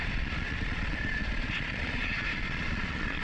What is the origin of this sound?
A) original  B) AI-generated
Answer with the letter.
B